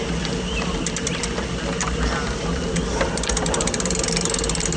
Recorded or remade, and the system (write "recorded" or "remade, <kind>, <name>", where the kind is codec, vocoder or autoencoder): recorded